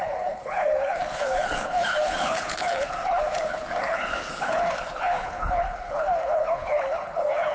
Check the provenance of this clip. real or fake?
fake